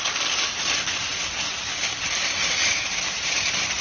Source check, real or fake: fake